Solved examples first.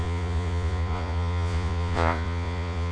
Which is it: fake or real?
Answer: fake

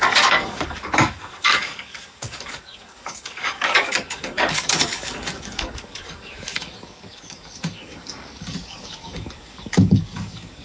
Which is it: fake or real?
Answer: fake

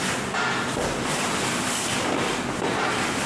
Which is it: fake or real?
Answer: real